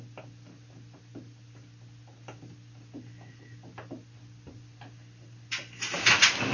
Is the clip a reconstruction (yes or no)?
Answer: no